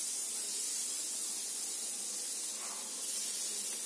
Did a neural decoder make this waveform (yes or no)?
no